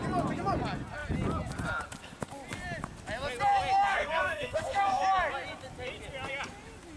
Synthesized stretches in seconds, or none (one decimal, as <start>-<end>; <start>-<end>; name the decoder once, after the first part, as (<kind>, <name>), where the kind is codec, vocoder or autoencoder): 3.9-5.0 (codec, SNAC)

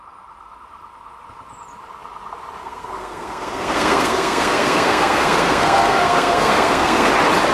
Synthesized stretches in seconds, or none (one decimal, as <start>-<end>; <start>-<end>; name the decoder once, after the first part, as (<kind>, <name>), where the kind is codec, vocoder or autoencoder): 2.6-7.1 (codec, SNAC)

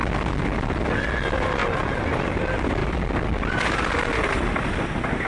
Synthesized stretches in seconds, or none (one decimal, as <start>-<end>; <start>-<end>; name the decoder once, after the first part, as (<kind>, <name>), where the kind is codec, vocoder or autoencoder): none

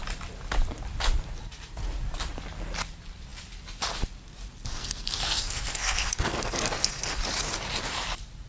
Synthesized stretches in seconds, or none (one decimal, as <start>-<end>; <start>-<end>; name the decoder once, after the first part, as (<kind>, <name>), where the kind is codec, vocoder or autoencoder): 4.7-7.2 (codec, SNAC)